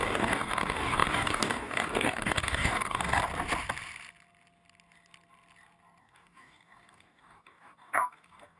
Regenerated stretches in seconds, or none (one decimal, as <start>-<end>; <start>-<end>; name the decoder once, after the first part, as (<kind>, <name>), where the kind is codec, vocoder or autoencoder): 0.0-3.2 (codec, DAC); 6.0-8.6